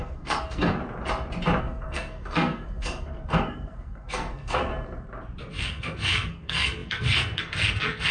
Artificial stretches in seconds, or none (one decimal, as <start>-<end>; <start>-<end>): 0.0-0.8; 1.6-4.7; 5.6-8.1